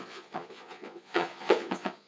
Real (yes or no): no